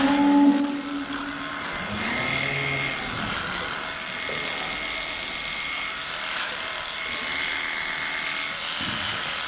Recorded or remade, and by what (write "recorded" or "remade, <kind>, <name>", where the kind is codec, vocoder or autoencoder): recorded